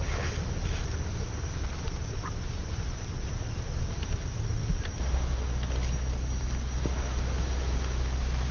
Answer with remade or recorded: recorded